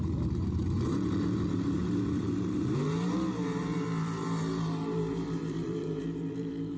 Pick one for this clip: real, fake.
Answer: fake